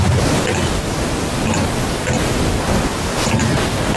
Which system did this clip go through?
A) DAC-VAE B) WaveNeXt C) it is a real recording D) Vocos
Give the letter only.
C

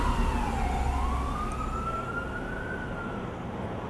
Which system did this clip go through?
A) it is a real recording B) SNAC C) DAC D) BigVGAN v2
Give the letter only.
A